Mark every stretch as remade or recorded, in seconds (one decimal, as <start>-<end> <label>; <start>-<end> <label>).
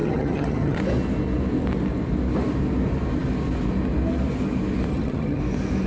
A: 0.0-0.8 remade; 0.8-4.9 recorded; 4.9-5.4 remade; 5.4-5.9 recorded